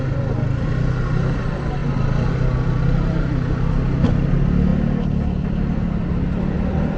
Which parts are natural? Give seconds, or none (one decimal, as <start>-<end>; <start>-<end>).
0.0-7.0

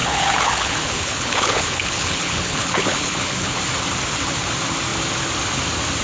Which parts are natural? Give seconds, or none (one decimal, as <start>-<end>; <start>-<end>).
3.6-6.0

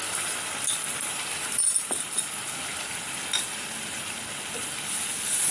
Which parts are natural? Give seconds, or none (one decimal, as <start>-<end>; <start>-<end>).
0.0-5.5